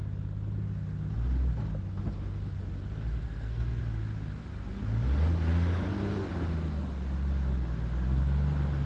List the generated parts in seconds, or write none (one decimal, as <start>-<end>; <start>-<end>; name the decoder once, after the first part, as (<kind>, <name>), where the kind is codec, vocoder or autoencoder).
3.2-3.8 (codec, SNAC)